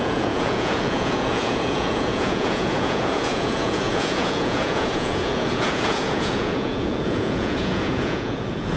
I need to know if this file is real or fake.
fake